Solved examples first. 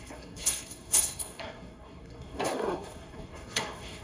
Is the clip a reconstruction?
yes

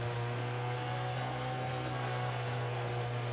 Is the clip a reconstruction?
yes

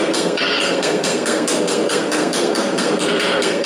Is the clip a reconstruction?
yes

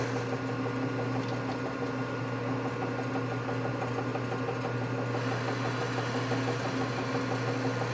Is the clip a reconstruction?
no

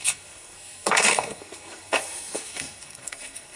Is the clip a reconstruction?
yes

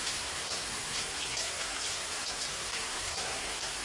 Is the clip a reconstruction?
yes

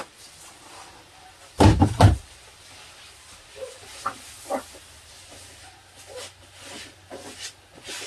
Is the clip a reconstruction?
no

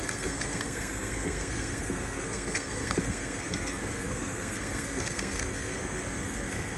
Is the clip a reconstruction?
yes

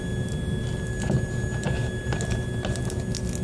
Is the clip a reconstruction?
no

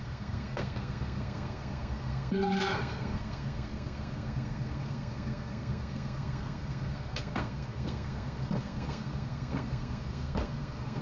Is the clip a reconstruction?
yes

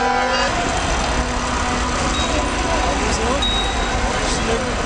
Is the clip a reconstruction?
no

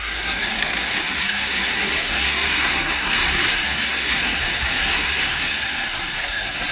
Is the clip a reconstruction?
yes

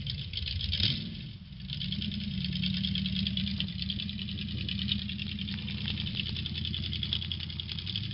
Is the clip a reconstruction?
no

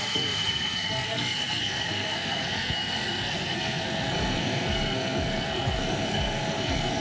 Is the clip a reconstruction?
yes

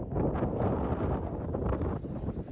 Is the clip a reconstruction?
no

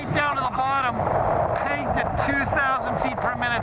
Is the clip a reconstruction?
no